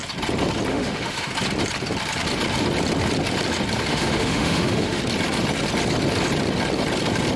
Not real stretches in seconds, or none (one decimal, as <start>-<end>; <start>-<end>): 0.7-1.3; 3.9-5.0